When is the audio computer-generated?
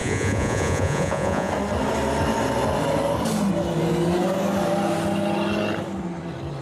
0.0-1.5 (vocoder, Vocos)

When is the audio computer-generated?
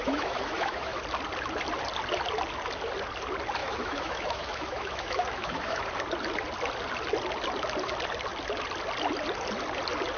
0.0-1.0 (autoencoder, DAC-VAE); 3.6-5.8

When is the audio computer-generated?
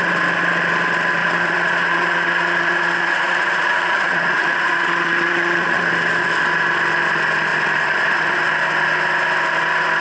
1.2-5.9 (vocoder, Vocos)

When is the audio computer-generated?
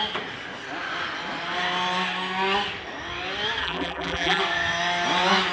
3.6-4.4 (vocoder, BigVGAN v2)